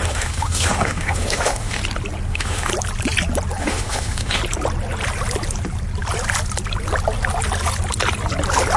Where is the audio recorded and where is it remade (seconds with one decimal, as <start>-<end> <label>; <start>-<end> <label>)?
0.0-1.8 remade; 1.8-2.3 recorded; 2.3-2.7 remade; 2.7-3.6 recorded; 3.6-4.4 remade; 4.4-8.8 recorded